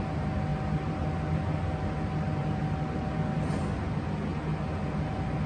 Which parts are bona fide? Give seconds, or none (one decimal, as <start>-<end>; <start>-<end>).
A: 0.0-5.5